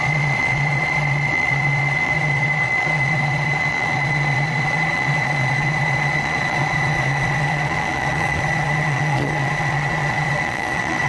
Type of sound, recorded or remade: remade